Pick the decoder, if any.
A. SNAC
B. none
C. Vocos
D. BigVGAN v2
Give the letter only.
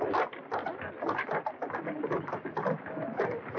B